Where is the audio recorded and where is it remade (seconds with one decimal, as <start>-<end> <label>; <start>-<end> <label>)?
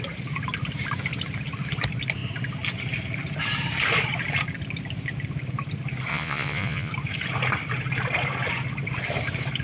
0.0-6.1 recorded; 6.1-6.9 remade; 6.9-9.6 recorded